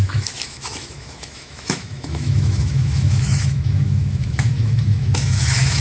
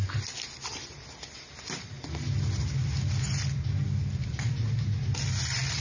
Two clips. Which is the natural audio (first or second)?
second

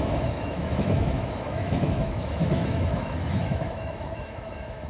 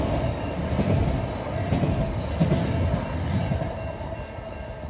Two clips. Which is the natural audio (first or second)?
second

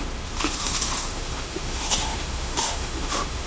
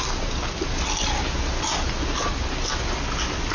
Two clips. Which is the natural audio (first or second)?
second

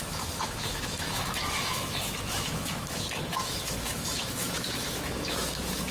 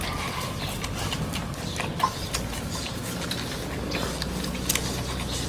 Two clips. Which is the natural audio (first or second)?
second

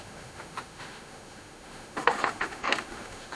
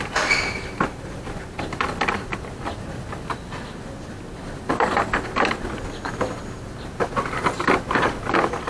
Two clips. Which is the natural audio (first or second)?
second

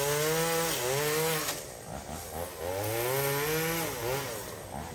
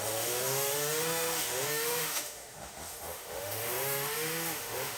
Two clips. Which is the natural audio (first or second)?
first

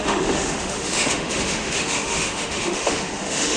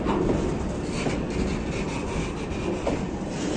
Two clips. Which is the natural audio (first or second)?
second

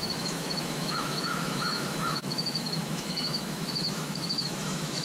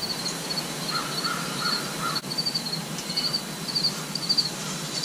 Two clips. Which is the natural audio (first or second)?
second